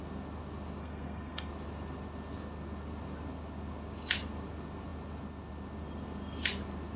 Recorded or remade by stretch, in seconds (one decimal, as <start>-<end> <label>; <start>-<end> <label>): 0.0-0.8 recorded; 0.8-1.5 remade; 1.5-7.0 recorded